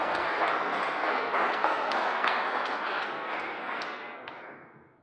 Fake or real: fake